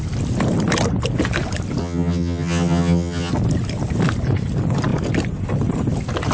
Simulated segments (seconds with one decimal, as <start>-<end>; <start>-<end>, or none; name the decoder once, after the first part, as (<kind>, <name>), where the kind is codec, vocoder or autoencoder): 1.8-3.3 (vocoder, HiFi-GAN)